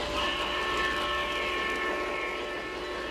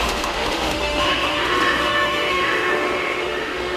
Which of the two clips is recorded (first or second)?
first